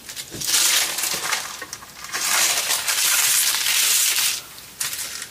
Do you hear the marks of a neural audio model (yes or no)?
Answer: no